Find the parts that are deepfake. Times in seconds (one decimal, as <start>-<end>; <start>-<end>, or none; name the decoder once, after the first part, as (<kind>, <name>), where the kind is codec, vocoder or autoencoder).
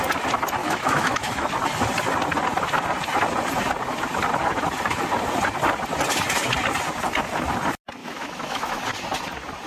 0.6-1.5 (autoencoder, DAC-VAE); 8.0-8.8